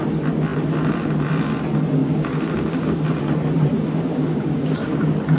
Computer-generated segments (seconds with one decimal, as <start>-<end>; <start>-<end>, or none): 2.0-3.2; 3.7-5.0